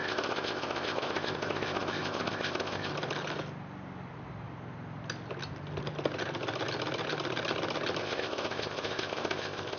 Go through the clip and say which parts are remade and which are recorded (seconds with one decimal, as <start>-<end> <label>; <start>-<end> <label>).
0.0-2.9 remade; 2.9-8.0 recorded; 8.0-9.8 remade